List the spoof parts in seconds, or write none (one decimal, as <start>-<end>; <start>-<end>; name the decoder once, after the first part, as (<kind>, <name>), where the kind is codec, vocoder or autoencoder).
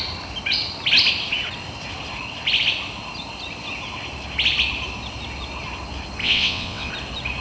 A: 6.2-6.9 (vocoder, WaveNeXt)